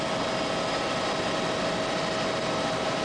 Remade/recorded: recorded